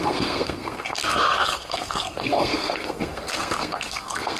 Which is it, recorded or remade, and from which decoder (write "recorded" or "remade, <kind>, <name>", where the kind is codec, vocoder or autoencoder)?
remade, codec, SNAC